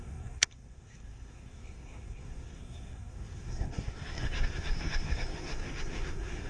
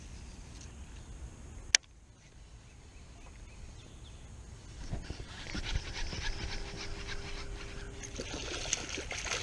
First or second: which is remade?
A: first